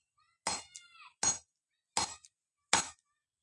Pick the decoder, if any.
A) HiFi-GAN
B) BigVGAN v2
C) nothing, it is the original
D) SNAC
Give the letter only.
C